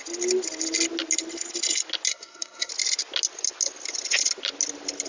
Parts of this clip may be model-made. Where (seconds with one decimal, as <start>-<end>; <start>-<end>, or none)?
2.1-2.7